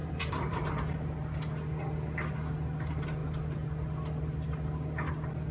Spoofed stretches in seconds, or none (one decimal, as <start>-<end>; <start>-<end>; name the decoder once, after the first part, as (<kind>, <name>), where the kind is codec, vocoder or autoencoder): 0.0-0.7 (vocoder, BigVGAN v2)